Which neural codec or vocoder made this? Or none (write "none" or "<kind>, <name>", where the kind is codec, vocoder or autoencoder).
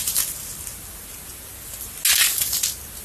none